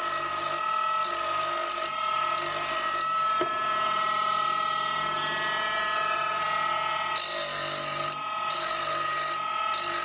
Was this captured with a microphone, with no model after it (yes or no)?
yes